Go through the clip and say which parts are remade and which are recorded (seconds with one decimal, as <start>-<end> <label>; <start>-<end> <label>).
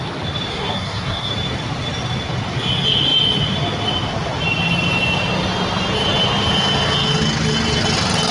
0.0-0.5 recorded; 0.5-1.3 remade; 1.3-8.3 recorded